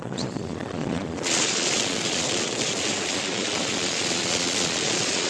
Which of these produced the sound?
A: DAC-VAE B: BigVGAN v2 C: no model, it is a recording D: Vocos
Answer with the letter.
D